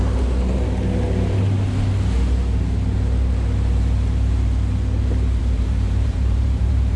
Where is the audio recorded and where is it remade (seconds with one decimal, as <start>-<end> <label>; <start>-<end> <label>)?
0.0-5.4 recorded; 5.4-7.0 remade